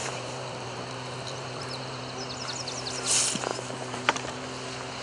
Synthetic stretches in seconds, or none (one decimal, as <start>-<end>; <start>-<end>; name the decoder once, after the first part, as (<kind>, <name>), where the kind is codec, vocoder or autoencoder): 0.0-2.0 (vocoder, BigVGAN v2); 3.5-4.4